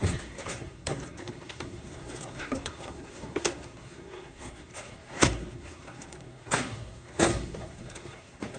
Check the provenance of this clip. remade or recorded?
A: remade